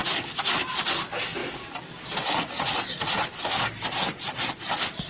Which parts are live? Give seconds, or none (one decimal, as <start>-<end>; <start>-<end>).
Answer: 0.0-5.1

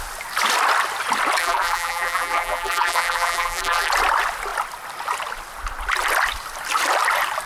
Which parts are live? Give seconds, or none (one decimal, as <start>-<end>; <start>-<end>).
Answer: 0.0-1.4; 3.9-7.5

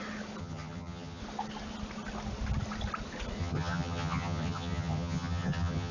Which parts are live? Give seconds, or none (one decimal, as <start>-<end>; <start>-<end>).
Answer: 0.0-0.4; 1.2-3.4

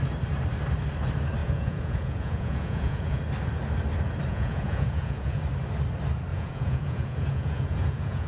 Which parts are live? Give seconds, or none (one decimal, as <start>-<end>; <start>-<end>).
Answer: 0.0-1.4; 3.2-4.3; 5.4-6.3

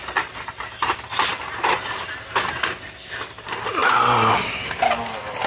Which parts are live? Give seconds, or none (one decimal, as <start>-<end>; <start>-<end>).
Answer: 0.0-5.5

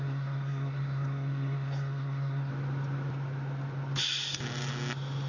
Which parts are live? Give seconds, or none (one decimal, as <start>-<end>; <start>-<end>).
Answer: 2.5-5.3

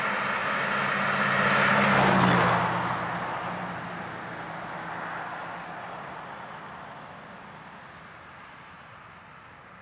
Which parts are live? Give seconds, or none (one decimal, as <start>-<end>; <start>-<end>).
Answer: 0.0-9.8